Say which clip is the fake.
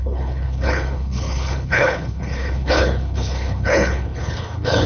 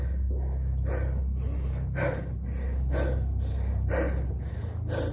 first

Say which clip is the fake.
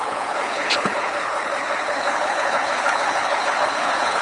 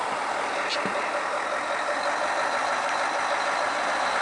first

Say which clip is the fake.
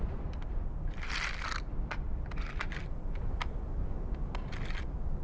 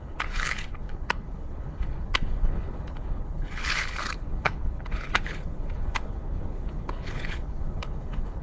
second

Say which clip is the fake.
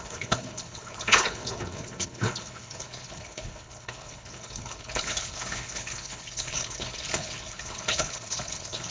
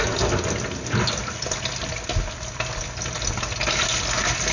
first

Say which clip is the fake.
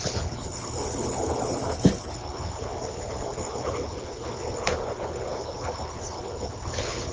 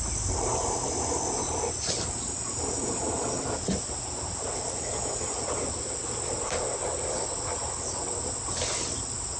first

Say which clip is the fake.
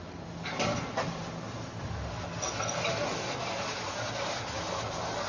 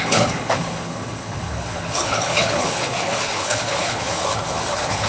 second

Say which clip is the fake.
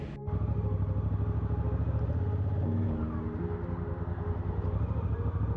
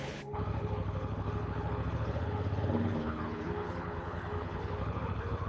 second